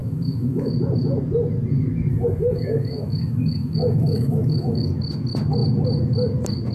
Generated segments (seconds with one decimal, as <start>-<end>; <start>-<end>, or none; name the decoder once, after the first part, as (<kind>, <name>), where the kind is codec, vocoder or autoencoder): 0.0-0.7 (autoencoder, DAC-VAE); 2.1-4.9